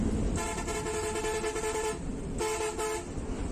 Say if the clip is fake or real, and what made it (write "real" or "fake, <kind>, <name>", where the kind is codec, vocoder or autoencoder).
real